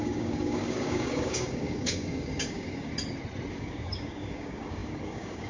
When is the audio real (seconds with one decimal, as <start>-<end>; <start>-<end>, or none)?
2.9-3.5